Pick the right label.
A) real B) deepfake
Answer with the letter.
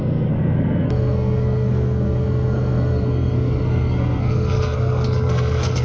B